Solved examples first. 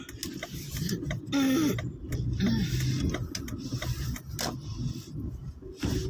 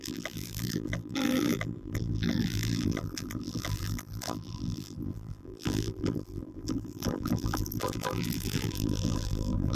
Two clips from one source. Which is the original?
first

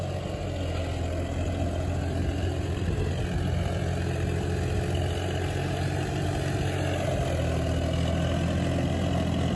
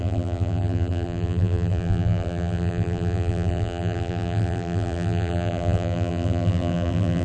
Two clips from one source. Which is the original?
first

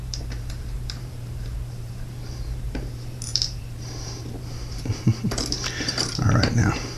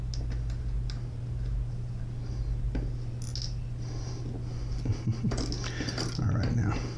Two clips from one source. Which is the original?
second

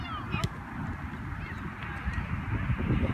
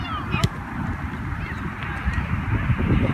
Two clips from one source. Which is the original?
first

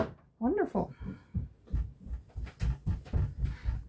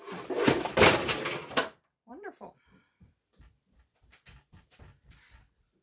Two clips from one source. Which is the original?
first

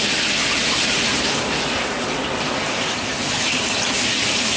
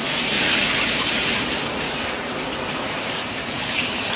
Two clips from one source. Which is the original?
first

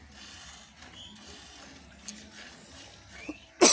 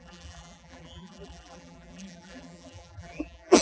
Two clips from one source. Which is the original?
first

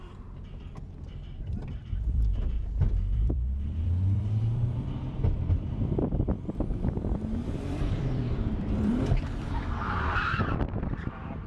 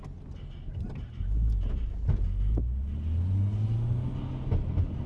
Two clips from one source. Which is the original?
second